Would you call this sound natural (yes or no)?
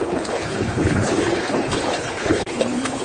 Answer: no